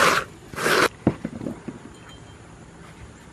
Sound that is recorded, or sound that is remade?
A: recorded